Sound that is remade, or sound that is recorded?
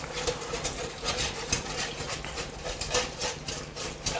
recorded